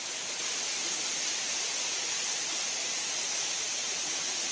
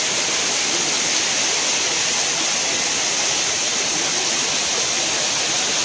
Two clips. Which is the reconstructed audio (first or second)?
first